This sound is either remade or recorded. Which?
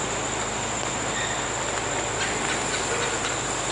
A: recorded